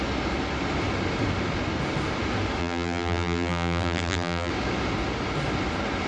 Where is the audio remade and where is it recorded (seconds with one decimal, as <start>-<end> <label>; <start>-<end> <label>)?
0.0-2.6 recorded; 2.6-4.5 remade; 4.5-6.1 recorded